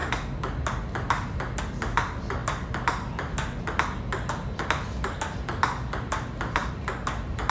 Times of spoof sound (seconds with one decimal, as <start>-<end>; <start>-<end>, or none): none

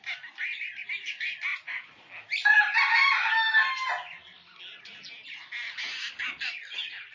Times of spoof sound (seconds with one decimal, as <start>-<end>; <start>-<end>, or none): 1.5-2.1

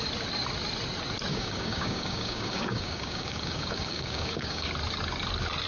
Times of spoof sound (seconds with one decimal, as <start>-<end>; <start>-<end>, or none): 1.3-4.7

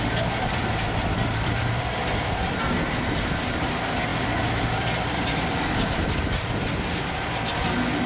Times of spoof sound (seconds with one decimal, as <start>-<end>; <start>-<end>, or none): 1.0-1.7; 4.1-6.1

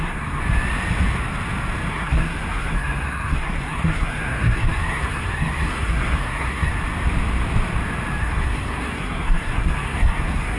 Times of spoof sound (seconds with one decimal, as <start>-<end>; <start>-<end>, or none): 0.0-0.4; 1.9-6.7; 8.2-10.6